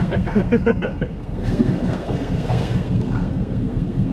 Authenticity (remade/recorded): remade